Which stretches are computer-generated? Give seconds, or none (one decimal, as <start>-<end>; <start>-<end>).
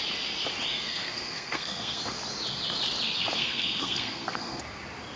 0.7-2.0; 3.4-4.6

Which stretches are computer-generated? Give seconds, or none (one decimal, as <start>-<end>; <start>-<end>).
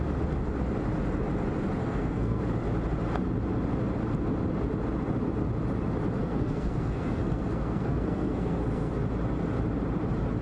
1.8-2.4; 6.2-8.9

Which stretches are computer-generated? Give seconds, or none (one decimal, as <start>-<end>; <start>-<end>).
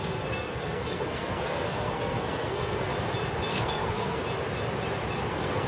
0.0-2.9; 3.5-4.2; 5.3-5.7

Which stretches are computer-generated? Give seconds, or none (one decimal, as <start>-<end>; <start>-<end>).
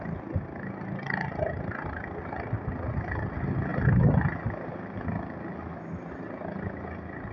none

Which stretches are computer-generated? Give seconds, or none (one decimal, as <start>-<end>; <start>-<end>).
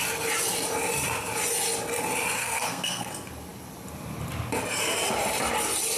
2.4-3.1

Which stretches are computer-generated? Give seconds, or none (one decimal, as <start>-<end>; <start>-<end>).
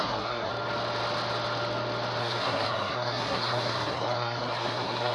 0.0-0.5; 2.2-5.1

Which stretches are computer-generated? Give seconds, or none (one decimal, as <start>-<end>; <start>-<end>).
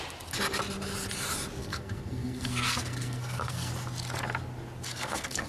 1.6-3.7; 4.9-5.5